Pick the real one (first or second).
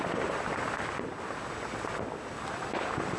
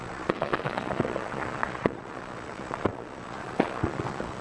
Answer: first